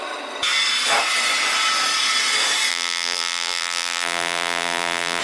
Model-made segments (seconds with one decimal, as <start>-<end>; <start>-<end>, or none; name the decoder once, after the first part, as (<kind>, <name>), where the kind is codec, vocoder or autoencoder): 2.7-5.2 (vocoder, BigVGAN v2)